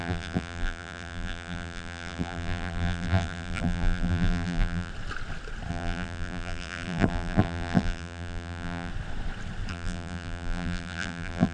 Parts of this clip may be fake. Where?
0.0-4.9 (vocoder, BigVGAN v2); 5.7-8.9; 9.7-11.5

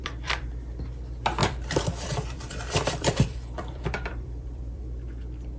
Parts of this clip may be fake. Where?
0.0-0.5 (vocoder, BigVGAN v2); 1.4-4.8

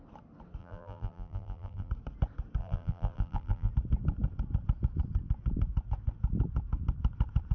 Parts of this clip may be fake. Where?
0.6-1.9 (vocoder, BigVGAN v2); 2.6-3.7